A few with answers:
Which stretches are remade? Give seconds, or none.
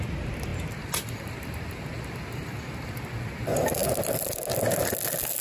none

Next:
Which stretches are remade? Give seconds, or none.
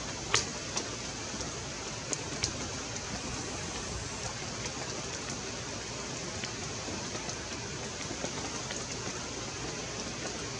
none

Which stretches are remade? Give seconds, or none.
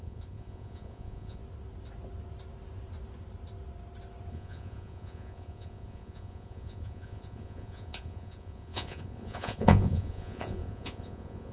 0.0-1.4; 4.3-11.5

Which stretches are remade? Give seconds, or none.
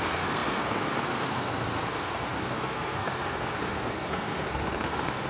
0.0-5.3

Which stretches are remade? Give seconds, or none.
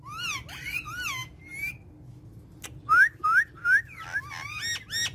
none